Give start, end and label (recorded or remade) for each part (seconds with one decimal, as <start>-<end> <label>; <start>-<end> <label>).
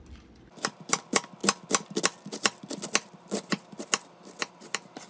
0.0-5.1 recorded